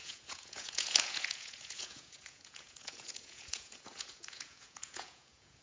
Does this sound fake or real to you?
fake